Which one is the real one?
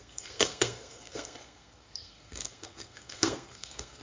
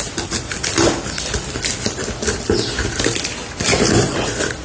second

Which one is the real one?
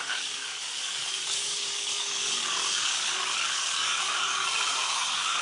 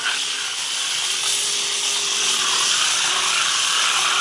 second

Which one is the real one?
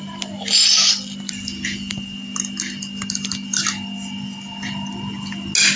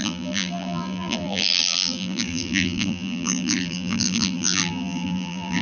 first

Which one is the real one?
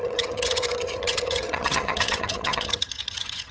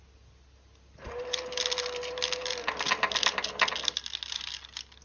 second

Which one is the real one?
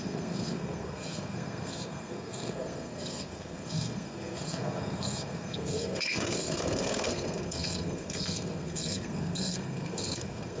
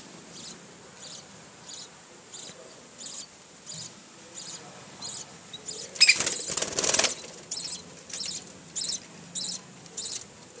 second